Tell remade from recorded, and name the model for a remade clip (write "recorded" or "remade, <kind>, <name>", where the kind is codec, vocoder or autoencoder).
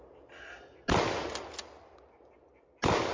recorded